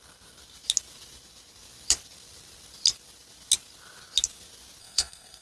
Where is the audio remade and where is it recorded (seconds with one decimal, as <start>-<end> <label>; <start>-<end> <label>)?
0.0-4.8 recorded; 4.8-5.4 remade